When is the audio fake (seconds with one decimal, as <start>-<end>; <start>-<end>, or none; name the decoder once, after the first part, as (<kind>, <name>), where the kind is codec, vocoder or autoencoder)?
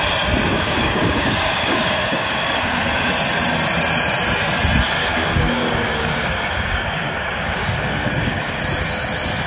0.5-3.1 (codec, DAC); 5.0-8.6